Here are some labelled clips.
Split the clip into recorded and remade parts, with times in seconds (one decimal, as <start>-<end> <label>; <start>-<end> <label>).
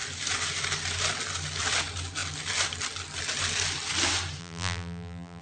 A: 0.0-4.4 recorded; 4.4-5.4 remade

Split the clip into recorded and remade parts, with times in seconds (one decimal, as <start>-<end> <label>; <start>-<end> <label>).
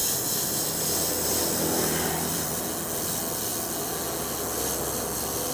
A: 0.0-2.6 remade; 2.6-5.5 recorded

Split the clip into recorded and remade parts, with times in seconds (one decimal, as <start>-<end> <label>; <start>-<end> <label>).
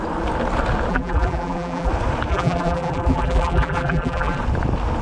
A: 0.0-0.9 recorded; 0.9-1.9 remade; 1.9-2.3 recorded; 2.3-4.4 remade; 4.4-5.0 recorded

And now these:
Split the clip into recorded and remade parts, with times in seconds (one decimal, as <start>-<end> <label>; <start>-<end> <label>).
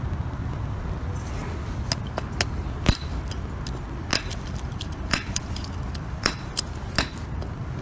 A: 0.0-4.3 recorded; 4.3-6.6 remade; 6.6-7.8 recorded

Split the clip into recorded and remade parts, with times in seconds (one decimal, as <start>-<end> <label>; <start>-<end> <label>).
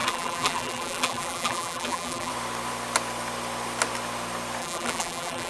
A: 0.0-2.3 remade; 2.3-4.6 recorded; 4.6-5.5 remade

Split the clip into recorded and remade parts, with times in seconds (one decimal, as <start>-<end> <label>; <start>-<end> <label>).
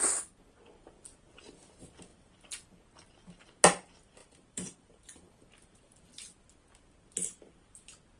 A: 0.0-4.2 recorded; 4.2-5.5 remade; 5.5-8.2 recorded